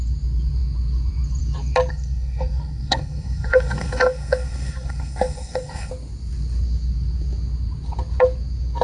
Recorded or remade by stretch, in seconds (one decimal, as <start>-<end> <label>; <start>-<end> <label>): 0.0-1.9 recorded; 1.9-5.9 remade; 5.9-8.8 recorded